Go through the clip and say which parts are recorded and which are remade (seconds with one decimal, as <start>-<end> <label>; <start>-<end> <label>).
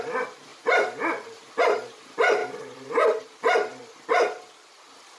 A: 0.0-2.4 recorded; 2.4-3.2 remade; 3.2-5.2 recorded